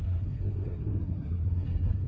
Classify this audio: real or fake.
fake